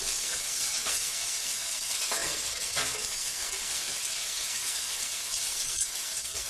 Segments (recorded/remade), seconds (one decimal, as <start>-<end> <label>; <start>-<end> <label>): 0.0-6.5 remade